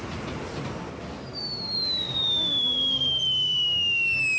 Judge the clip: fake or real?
real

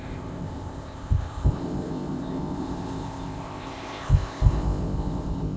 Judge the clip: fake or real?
fake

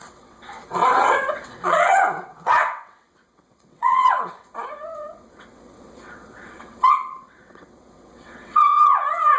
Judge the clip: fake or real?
fake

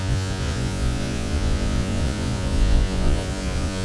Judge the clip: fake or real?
fake